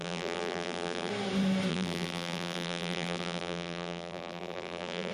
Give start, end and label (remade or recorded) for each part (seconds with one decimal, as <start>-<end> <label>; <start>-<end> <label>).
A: 0.0-1.1 remade; 1.1-1.7 recorded; 1.7-5.1 remade